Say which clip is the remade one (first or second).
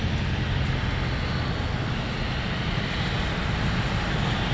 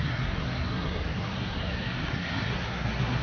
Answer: second